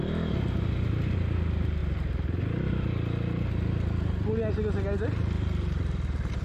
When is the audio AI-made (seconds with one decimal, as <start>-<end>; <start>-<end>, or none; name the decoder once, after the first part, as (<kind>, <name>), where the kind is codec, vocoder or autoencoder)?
none

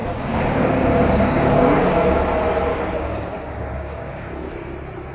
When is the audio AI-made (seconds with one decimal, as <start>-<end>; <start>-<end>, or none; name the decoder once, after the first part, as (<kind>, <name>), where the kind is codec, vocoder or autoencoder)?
0.0-2.2 (codec, DAC); 2.7-4.5

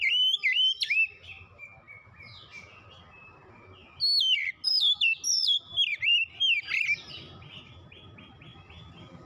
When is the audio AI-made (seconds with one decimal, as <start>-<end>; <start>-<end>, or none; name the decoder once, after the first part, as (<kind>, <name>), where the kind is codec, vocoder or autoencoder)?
none

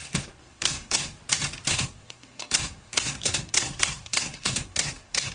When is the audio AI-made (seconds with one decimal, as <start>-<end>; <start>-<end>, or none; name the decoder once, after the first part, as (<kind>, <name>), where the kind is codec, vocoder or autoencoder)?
0.0-1.2 (codec, SNAC); 1.7-5.3

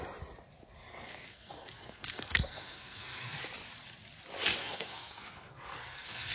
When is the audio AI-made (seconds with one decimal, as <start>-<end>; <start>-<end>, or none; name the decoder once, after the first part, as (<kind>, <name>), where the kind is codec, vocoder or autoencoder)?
0.9-3.4 (codec, SNAC); 4.6-6.3